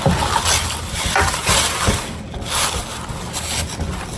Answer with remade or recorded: recorded